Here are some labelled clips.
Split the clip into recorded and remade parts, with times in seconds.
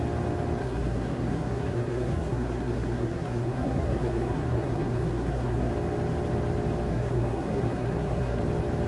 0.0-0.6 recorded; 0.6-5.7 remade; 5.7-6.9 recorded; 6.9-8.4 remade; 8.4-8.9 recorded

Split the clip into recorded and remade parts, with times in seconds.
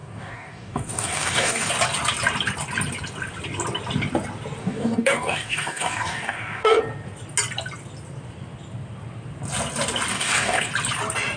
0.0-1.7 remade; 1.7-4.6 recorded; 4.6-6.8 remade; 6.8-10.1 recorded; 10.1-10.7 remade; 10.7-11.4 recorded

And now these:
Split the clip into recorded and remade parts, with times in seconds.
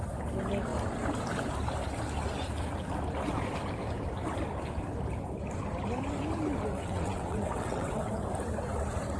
0.0-6.8 recorded; 6.8-8.1 remade; 8.1-9.2 recorded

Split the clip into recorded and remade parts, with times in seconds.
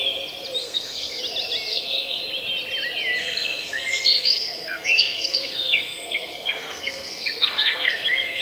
0.0-0.6 recorded; 0.6-1.2 remade; 1.2-1.7 recorded; 1.7-2.2 remade; 2.2-3.2 recorded; 3.2-8.4 remade